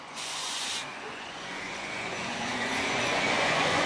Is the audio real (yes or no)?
no